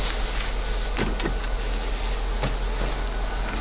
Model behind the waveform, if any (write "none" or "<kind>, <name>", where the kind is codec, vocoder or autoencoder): none